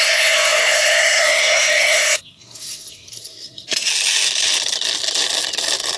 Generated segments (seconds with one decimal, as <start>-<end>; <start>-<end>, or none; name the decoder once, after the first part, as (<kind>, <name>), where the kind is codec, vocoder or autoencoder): 0.0-3.9 (codec, SNAC)